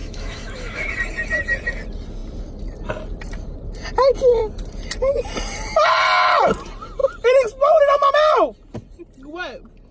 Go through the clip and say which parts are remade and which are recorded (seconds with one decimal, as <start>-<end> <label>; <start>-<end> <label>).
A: 0.0-0.9 remade; 0.9-9.9 recorded